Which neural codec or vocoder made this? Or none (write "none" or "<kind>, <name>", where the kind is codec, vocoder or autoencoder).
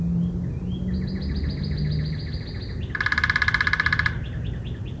none